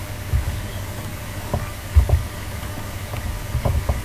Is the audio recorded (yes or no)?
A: no